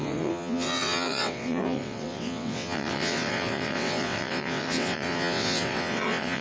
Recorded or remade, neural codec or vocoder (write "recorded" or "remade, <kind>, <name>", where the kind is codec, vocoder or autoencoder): remade, vocoder, WaveNeXt